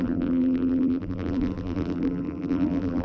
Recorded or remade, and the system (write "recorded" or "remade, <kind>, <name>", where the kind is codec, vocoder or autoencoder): remade, vocoder, BigVGAN v2